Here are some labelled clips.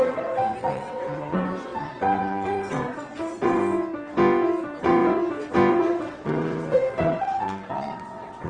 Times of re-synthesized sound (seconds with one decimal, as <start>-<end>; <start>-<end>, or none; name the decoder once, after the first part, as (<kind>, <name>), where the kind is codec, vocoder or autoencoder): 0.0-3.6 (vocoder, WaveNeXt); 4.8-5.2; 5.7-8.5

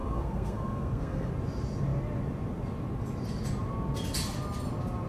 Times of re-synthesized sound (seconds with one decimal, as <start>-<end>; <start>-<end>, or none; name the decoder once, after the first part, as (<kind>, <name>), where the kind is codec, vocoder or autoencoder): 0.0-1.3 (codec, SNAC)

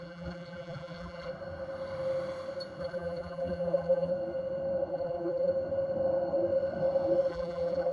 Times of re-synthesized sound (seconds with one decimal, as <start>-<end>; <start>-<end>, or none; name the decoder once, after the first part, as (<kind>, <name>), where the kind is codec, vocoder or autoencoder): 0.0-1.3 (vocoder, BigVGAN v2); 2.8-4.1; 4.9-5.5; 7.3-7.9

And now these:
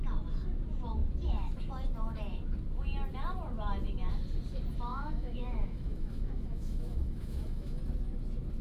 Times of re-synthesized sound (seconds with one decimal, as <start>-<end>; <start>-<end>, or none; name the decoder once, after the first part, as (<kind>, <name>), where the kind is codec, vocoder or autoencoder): 4.9-7.8 (autoencoder, DAC-VAE)

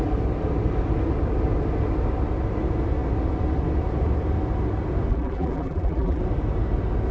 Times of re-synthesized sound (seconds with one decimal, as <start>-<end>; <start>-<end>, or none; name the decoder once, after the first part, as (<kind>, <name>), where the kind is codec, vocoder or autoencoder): 5.1-6.2 (vocoder, BigVGAN v2)